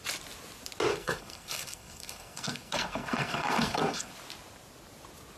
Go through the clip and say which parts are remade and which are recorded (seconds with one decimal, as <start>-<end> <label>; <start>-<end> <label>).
0.0-0.9 recorded; 0.9-4.1 remade; 4.1-5.4 recorded